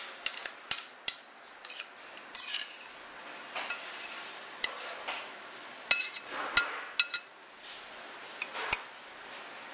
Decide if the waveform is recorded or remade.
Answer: recorded